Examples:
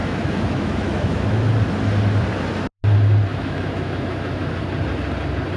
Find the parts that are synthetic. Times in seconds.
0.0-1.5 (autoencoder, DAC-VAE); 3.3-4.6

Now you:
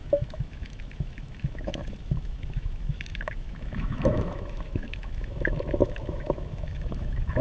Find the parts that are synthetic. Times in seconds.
0.0-7.4 (autoencoder, DAC-VAE)

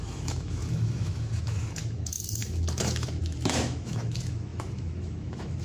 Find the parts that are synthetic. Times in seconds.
0.0-5.6 (autoencoder, DAC-VAE)